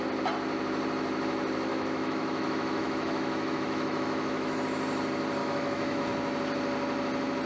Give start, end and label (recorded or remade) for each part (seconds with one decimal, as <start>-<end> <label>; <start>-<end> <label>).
0.0-1.7 recorded; 1.7-4.6 remade; 4.6-5.4 recorded; 5.4-6.0 remade; 6.0-7.5 recorded